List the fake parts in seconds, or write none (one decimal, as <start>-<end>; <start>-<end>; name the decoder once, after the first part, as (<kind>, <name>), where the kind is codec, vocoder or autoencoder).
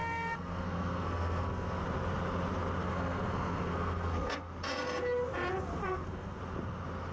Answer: 0.0-1.8 (codec, SNAC); 2.8-4.5; 5.8-6.4